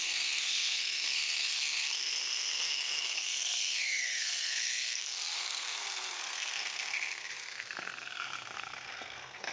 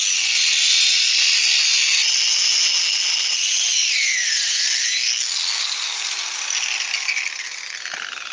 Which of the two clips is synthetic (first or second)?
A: first